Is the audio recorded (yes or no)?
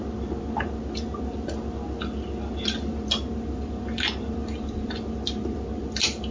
yes